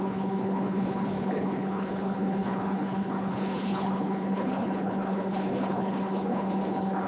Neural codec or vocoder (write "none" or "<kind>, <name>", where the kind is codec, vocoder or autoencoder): codec, HILCodec